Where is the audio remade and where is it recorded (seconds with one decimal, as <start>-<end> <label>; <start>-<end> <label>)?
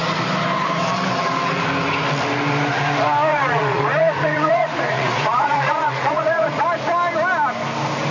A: 0.0-3.3 recorded; 3.3-6.6 remade; 6.6-8.1 recorded